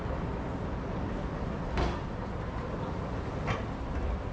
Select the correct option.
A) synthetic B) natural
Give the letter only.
B